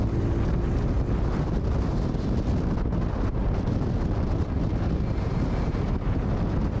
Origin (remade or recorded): recorded